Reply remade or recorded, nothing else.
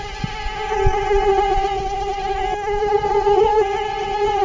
recorded